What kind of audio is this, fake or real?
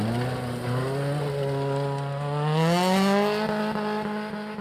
real